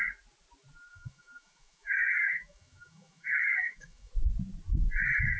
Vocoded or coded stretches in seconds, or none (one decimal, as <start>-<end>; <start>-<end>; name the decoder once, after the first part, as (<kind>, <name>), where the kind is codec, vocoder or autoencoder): 0.9-4.1 (autoencoder, DAC-VAE)